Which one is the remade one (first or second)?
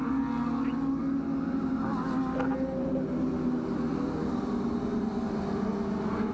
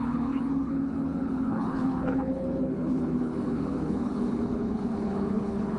second